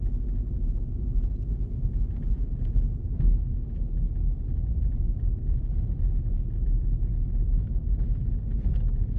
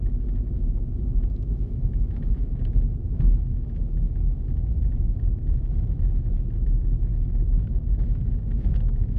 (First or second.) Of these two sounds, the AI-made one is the second